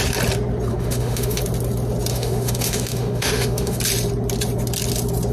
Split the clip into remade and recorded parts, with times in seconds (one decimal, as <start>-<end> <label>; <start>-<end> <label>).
0.0-0.7 recorded; 0.7-1.4 remade; 1.4-2.1 recorded; 2.1-3.8 remade; 3.8-5.3 recorded